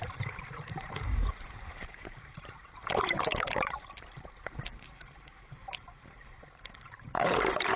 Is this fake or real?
fake